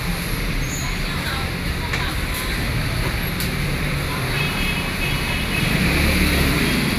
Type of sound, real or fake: real